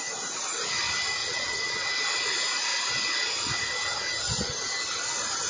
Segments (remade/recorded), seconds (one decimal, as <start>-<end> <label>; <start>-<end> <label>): 0.0-1.2 recorded; 1.2-1.9 remade; 1.9-5.5 recorded